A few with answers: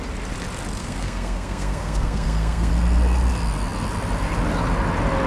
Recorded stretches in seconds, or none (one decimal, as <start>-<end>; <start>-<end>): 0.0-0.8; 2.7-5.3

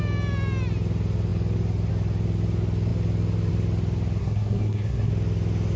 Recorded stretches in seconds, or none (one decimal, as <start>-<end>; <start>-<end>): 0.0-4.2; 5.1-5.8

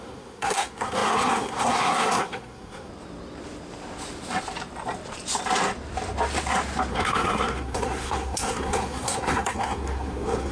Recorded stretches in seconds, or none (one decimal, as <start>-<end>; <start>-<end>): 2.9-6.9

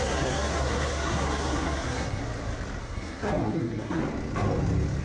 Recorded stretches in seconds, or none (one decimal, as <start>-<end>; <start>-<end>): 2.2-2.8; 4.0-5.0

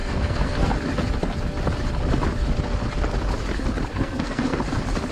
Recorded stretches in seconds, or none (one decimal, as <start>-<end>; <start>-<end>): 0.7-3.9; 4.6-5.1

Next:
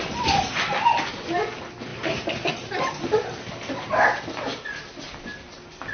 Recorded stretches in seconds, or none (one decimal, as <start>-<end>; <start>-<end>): 0.0-5.9

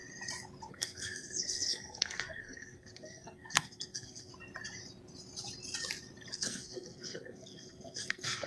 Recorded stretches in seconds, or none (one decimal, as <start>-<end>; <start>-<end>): 0.0-0.7; 4.3-6.3

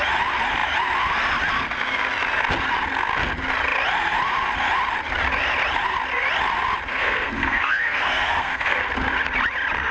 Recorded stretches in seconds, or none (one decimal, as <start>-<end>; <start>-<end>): 0.0-6.9; 8.8-9.9